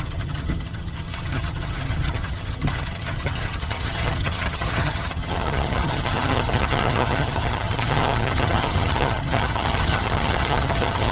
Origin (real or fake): fake